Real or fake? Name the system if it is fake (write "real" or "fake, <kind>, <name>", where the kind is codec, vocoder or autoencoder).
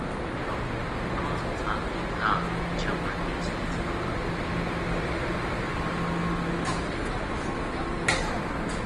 real